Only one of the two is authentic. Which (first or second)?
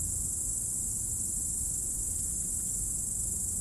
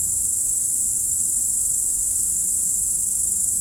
first